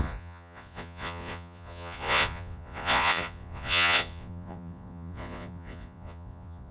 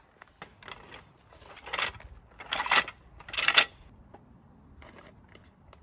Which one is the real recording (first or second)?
second